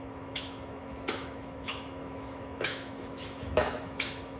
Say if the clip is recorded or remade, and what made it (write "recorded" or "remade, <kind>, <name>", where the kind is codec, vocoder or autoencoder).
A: remade, autoencoder, DAC-VAE